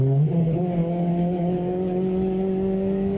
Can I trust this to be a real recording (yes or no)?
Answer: no